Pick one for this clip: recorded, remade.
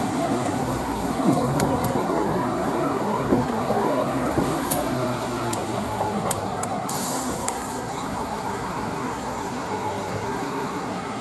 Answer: remade